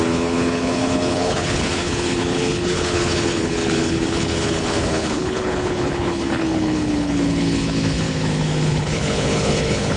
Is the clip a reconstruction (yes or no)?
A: yes